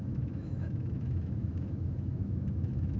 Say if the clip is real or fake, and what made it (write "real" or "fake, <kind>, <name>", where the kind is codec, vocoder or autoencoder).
fake, autoencoder, DAC-VAE